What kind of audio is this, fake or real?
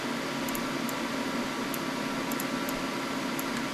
real